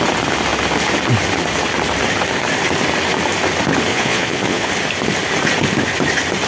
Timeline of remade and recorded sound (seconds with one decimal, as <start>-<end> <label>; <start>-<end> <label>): 0.0-3.9 recorded; 3.9-4.7 remade; 4.7-6.5 recorded